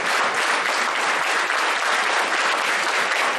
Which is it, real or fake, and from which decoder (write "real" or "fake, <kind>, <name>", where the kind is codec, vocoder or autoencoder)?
real